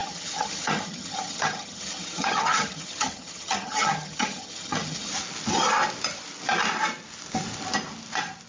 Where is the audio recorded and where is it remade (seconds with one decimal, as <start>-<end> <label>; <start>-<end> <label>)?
0.0-5.1 remade; 5.1-8.5 recorded